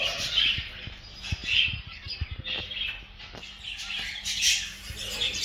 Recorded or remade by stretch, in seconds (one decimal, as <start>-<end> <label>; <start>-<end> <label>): 0.0-5.4 recorded